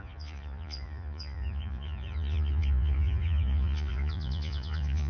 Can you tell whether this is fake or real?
fake